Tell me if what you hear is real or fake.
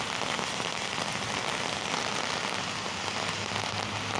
real